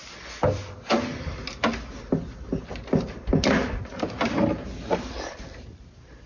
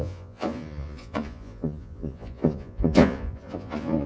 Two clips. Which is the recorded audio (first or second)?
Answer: first